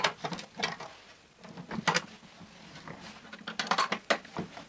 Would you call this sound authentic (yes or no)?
yes